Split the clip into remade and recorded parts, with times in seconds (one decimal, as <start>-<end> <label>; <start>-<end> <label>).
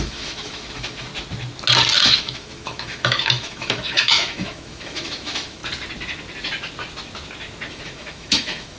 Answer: 0.0-1.1 remade; 1.1-2.1 recorded; 2.1-5.6 remade; 5.6-7.7 recorded; 7.7-8.8 remade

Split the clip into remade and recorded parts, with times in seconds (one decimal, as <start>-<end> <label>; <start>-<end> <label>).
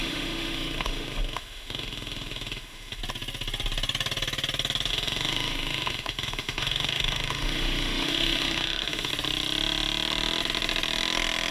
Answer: 0.0-3.0 remade; 3.0-4.9 recorded; 4.9-9.1 remade; 9.1-11.5 recorded